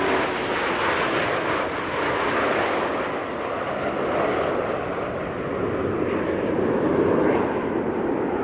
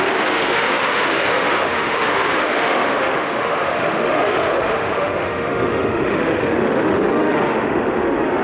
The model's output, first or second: second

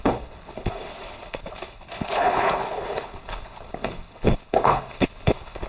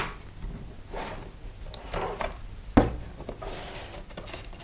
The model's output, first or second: first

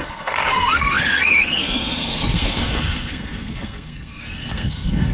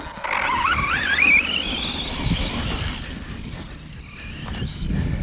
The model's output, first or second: first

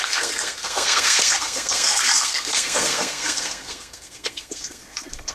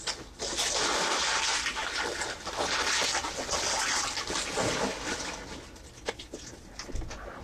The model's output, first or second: first